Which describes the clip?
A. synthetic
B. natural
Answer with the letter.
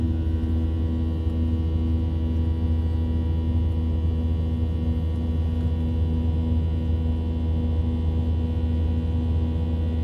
B